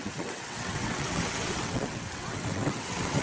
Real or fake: fake